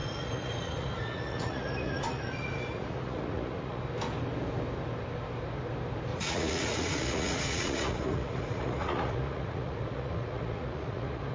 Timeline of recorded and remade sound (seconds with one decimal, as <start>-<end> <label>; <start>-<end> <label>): 0.0-3.8 remade; 3.8-6.1 recorded; 6.1-11.3 remade

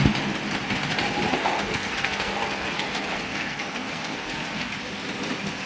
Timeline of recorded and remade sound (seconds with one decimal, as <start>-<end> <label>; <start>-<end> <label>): 0.0-1.3 recorded; 1.3-4.7 remade; 4.7-5.7 recorded

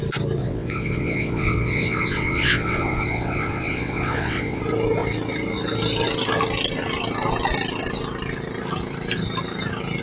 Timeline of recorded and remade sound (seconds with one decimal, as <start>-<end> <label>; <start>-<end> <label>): 0.0-0.4 recorded; 0.4-4.6 remade; 4.6-10.0 recorded

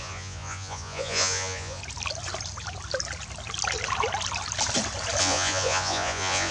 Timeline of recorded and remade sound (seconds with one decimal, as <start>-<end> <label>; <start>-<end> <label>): 0.0-1.8 remade; 1.8-5.2 recorded; 5.2-6.5 remade

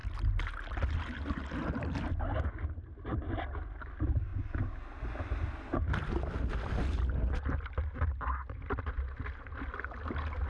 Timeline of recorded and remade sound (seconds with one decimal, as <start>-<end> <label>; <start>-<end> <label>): 0.0-10.5 recorded